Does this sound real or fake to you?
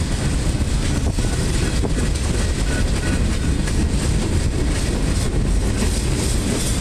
real